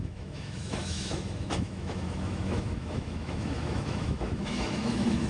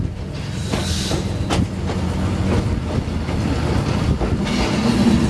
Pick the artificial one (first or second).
first